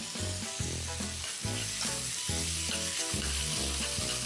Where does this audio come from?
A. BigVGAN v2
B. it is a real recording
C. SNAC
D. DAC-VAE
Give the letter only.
B